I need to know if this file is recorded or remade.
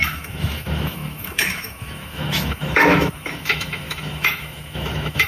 remade